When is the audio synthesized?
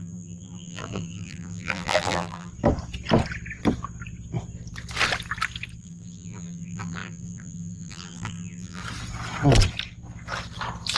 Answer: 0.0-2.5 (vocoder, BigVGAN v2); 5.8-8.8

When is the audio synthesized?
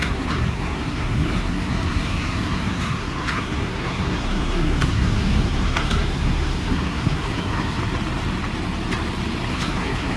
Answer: 0.0-7.8 (codec, SNAC); 9.5-10.2